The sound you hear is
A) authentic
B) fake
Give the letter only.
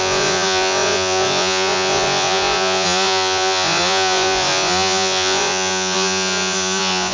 B